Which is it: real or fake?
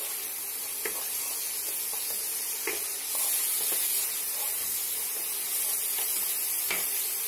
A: real